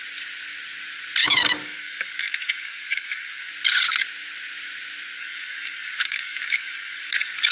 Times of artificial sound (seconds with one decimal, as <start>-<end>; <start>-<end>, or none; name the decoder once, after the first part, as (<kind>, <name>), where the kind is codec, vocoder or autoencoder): 1.2-3.5 (codec, DAC); 5.2-7.5